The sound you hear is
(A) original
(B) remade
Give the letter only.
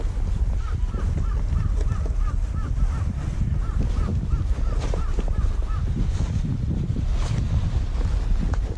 A